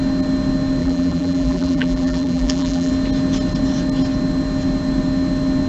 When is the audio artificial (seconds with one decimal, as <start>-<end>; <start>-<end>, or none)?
0.8-2.9